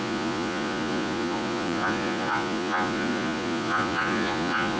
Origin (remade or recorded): remade